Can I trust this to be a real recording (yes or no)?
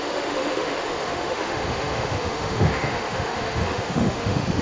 no